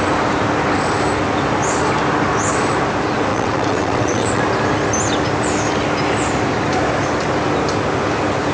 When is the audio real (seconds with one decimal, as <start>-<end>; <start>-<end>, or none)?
0.0-3.3; 4.4-8.5